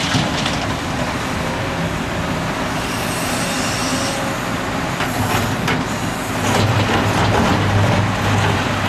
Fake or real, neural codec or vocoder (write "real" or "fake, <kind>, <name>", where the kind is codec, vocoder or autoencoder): real